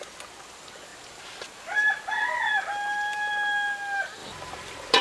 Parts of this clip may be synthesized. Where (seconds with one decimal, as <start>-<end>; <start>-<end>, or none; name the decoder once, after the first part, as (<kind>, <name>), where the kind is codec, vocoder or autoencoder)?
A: 4.2-5.0 (vocoder, BigVGAN v2)

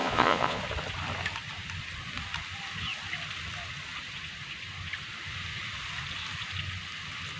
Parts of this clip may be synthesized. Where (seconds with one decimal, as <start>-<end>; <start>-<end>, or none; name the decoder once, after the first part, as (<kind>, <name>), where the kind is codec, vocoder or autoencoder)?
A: 0.0-0.6 (vocoder, Vocos)

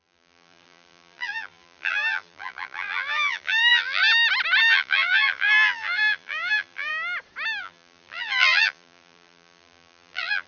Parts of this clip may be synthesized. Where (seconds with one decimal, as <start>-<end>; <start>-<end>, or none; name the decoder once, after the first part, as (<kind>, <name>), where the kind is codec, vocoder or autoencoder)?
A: 0.0-4.0 (vocoder, BigVGAN v2); 4.6-6.9; 7.6-10.5

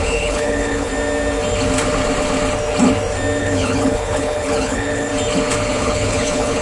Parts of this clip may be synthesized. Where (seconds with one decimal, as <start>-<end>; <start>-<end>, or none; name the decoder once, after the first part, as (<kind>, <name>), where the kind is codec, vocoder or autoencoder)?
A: 0.0-0.9 (codec, HILCodec); 3.4-5.1; 5.7-6.6

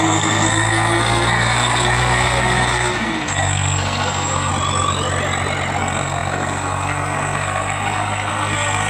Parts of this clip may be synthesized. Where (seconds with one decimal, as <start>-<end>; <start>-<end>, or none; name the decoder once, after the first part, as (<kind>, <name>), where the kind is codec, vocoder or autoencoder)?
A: 0.0-4.5 (codec, SNAC); 5.8-8.9